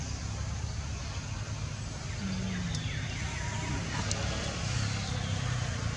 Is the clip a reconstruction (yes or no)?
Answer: no